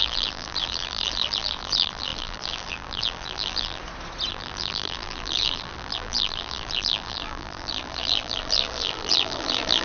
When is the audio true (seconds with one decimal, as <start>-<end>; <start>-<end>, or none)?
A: 3.8-4.3